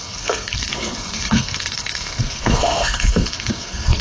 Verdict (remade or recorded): remade